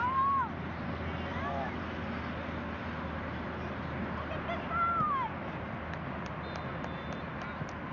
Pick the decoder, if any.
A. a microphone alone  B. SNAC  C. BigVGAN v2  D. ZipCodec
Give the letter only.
A